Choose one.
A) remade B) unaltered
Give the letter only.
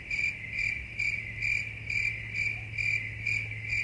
B